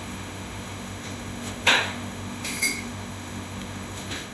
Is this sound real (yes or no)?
no